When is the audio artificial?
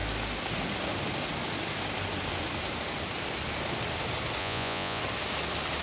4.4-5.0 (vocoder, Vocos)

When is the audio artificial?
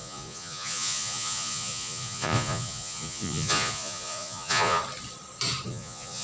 0.0-4.8 (vocoder, Vocos); 5.7-6.2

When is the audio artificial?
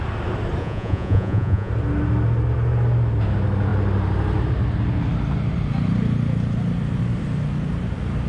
0.6-1.7 (vocoder, Vocos)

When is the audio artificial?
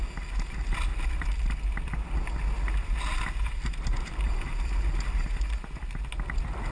none